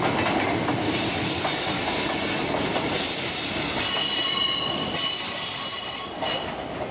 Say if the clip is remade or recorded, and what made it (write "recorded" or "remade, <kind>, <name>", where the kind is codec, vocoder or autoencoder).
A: recorded